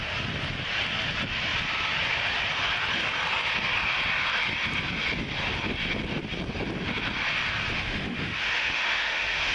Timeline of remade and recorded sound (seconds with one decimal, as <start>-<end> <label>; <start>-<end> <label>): 0.0-7.7 recorded; 7.7-9.5 remade